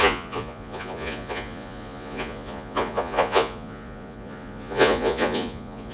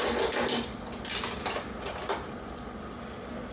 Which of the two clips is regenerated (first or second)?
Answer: first